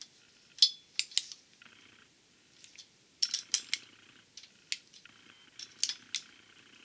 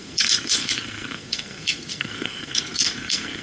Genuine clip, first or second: first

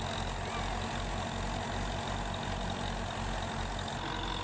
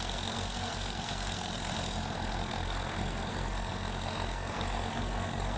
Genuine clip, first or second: first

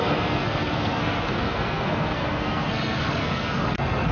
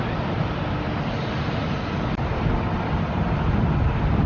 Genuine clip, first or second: second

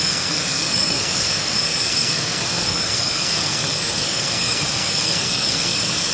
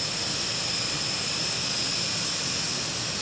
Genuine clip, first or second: second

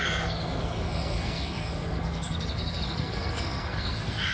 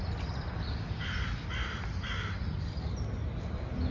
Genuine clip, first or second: second